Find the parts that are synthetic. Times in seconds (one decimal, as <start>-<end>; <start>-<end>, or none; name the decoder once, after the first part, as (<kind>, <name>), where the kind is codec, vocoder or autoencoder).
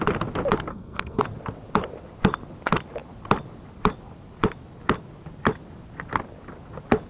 0.7-1.2 (codec, SNAC)